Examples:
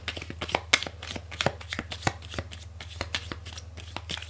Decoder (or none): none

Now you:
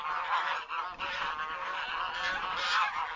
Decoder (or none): none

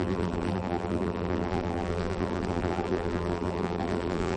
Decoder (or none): vocoder, BigVGAN v2